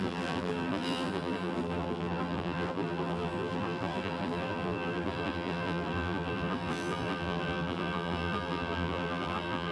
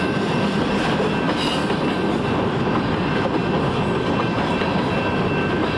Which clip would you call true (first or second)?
second